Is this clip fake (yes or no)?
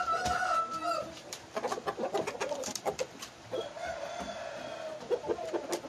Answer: no